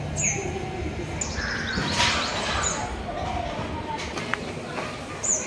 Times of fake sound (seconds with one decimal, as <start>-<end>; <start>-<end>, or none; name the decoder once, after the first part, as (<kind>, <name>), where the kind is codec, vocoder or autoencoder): none